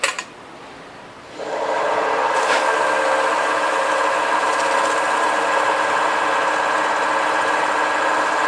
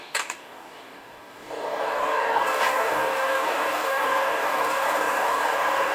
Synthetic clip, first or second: second